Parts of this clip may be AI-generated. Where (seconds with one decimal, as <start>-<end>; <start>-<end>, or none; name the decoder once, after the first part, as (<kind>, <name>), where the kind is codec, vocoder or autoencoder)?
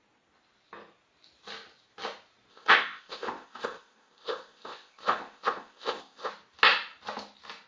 2.5-6.3 (codec, ZipCodec)